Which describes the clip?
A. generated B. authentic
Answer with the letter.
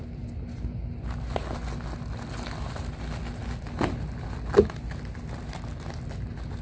B